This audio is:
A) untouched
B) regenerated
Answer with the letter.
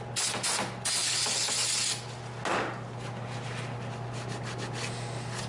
A